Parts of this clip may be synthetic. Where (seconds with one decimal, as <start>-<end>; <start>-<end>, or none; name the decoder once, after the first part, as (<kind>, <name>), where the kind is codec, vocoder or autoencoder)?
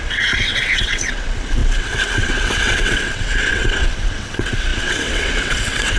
0.0-6.0 (vocoder, WaveNeXt)